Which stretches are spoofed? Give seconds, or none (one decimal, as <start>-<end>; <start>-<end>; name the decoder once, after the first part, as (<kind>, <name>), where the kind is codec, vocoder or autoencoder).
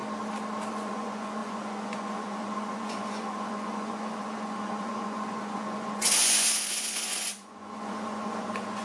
0.7-8.8 (vocoder, Vocos)